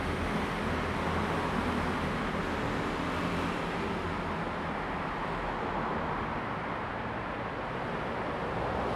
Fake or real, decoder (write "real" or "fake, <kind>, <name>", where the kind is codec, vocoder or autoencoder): real